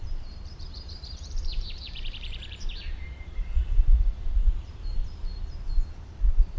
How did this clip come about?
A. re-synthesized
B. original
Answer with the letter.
A